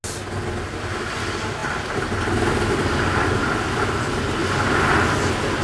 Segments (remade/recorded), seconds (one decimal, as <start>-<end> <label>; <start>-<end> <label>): 0.0-5.6 recorded